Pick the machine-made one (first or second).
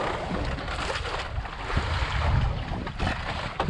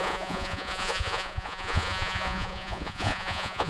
second